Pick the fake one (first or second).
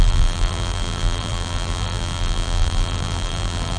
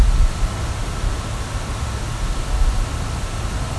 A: first